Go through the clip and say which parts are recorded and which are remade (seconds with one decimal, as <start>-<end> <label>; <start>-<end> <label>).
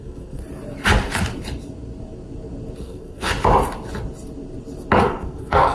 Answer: 0.0-0.4 remade; 0.4-2.8 recorded; 2.8-3.3 remade; 3.3-5.0 recorded; 5.0-5.7 remade